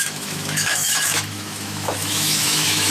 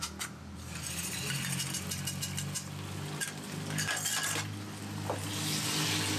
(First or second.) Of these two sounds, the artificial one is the first